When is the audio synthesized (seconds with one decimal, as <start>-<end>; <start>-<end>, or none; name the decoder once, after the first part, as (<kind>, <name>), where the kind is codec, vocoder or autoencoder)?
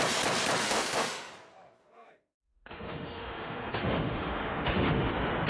0.6-1.3 (autoencoder, DAC-VAE); 1.8-5.1